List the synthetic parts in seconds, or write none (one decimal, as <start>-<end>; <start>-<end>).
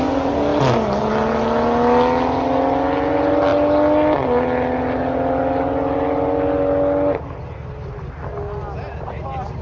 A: none